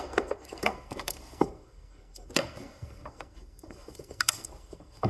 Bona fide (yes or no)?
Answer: no